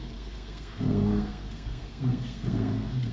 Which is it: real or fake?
fake